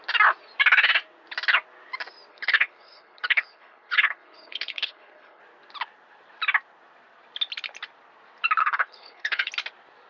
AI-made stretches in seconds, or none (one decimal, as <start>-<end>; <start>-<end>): 2.3-5.4; 8.6-9.5